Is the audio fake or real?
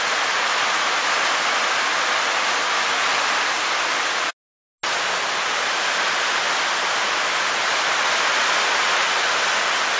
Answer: real